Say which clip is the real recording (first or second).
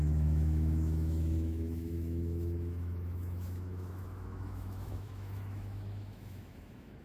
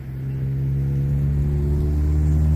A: second